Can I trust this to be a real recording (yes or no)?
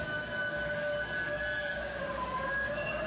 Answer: no